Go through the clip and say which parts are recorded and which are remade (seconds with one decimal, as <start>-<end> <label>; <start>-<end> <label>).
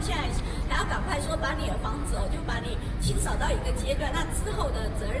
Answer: 0.0-2.0 recorded; 2.0-4.1 remade; 4.1-5.2 recorded